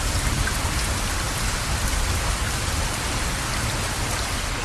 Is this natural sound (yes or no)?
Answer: yes